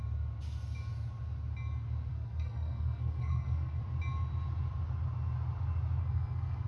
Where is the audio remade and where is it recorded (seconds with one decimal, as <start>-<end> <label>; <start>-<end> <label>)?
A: 0.0-2.1 recorded; 2.1-3.8 remade; 3.8-6.0 recorded; 6.0-6.7 remade

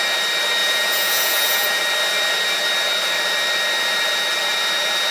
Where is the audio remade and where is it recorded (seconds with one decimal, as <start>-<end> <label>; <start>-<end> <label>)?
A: 0.0-0.6 recorded; 0.6-1.8 remade; 1.8-5.1 recorded

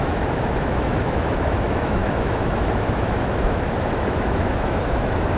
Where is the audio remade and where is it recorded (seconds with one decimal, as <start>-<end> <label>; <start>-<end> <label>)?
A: 0.0-5.4 remade

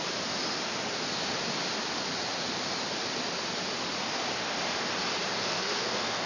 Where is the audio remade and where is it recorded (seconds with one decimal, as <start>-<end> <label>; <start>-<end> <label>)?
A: 0.0-5.4 recorded; 5.4-6.3 remade

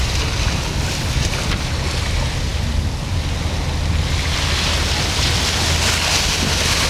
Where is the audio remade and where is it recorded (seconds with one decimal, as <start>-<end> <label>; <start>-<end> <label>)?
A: 0.0-6.9 recorded